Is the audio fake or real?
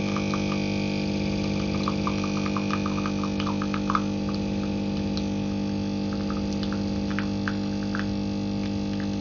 real